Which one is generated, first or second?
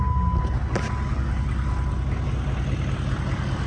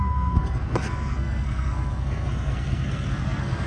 second